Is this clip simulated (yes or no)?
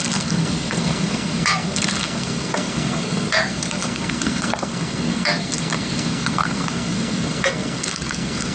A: yes